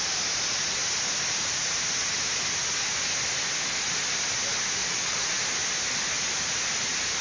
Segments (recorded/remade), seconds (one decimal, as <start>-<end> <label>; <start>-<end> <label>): 0.0-4.8 recorded; 4.8-5.4 remade; 5.4-7.2 recorded